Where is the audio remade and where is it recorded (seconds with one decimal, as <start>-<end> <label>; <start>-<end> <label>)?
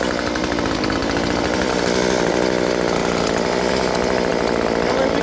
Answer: 0.0-4.3 recorded; 4.3-5.2 remade